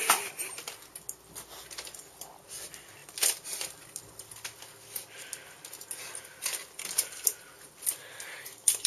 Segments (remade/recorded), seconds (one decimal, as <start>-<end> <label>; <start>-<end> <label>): 0.0-8.9 recorded